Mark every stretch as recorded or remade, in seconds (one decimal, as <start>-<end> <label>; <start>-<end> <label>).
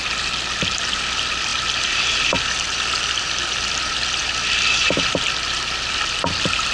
0.0-6.7 recorded